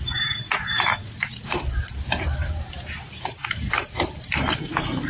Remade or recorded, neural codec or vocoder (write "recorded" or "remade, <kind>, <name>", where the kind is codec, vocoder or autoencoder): remade, vocoder, BigVGAN v2